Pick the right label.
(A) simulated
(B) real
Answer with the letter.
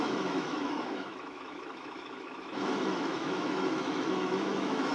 A